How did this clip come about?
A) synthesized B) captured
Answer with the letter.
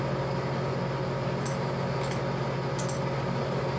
B